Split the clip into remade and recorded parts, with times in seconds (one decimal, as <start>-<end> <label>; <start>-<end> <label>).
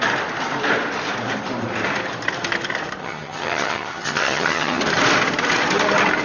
0.0-3.0 recorded; 3.0-4.8 remade; 4.8-6.2 recorded